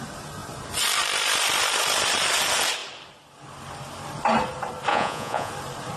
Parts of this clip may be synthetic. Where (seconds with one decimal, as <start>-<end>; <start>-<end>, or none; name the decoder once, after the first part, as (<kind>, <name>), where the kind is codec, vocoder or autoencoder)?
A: 4.9-5.5 (vocoder, Vocos)